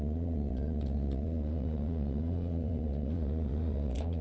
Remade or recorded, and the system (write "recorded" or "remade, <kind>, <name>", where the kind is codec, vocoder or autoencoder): remade, vocoder, Vocos